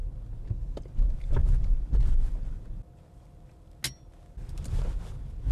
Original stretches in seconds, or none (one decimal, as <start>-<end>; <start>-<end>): 0.0-5.5